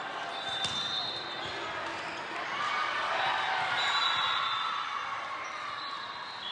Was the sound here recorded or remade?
recorded